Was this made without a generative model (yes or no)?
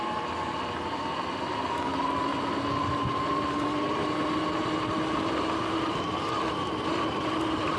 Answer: yes